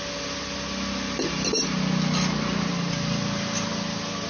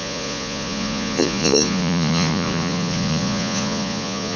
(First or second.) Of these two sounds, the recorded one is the first